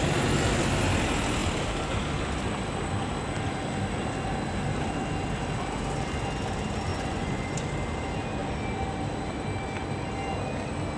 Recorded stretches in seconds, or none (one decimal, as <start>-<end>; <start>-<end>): 0.0-6.9; 7.7-11.0